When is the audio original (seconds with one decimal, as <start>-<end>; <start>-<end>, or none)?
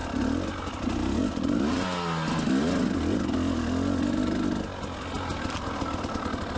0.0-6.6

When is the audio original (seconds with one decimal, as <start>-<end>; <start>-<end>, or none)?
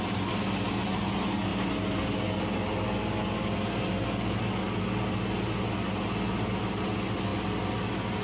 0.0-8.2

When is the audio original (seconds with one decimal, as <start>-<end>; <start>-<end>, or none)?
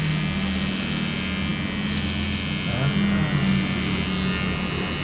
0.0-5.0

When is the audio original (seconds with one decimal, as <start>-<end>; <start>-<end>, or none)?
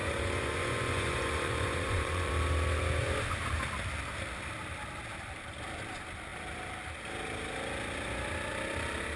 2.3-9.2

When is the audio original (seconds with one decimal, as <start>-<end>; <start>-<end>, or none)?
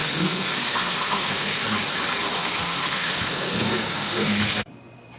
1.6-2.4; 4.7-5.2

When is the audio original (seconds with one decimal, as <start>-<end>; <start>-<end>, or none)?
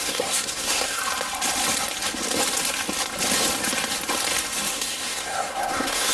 1.0-4.7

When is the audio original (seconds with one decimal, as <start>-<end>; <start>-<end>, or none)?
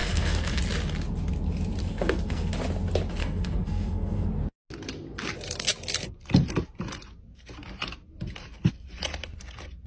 0.6-1.8; 2.5-3.2; 4.3-9.9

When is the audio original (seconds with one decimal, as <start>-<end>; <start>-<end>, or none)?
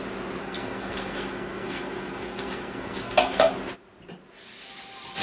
0.0-0.4; 3.5-5.2